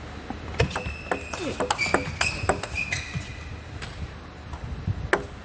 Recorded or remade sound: recorded